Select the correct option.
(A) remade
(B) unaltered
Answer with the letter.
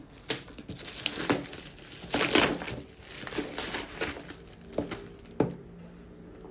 B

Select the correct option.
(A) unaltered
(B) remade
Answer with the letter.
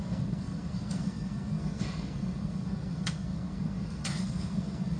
B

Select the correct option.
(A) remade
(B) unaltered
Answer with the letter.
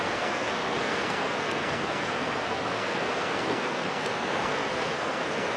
A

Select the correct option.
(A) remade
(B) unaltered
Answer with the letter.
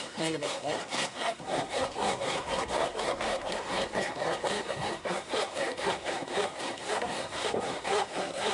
A